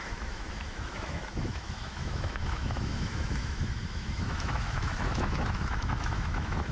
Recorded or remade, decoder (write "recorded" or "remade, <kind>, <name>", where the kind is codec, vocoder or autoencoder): remade, autoencoder, DAC-VAE